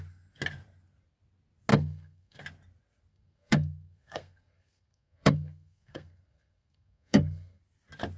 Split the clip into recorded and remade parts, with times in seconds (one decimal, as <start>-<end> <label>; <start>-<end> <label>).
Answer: 0.0-1.7 recorded; 1.7-2.4 remade; 2.4-3.1 recorded; 3.1-7.6 remade; 7.6-8.2 recorded

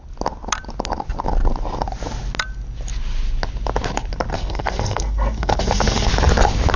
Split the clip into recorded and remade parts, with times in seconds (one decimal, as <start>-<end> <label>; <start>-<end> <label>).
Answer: 0.0-4.3 recorded; 4.3-6.1 remade; 6.1-6.8 recorded